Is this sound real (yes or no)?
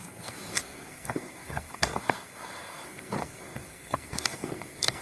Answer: no